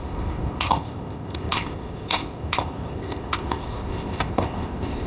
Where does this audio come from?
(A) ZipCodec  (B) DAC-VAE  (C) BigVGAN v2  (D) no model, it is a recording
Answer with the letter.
A